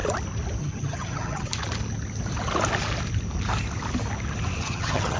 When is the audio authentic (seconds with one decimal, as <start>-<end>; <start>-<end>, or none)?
0.0-0.6; 1.5-4.6

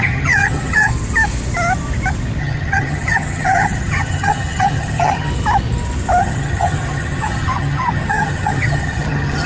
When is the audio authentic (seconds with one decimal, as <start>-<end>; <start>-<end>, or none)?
0.9-2.4; 5.3-6.2

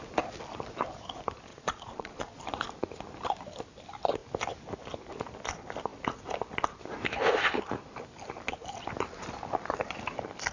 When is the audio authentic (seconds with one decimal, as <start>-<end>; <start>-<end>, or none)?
0.0-1.5; 2.4-10.5